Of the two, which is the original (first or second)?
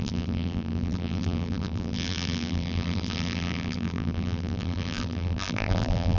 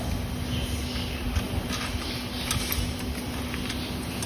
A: second